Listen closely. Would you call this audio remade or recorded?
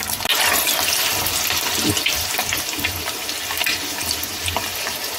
recorded